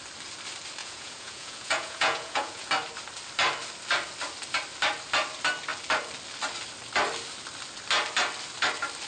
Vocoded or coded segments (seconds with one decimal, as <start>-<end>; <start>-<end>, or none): 0.8-2.7